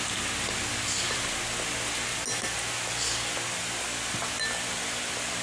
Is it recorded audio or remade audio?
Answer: recorded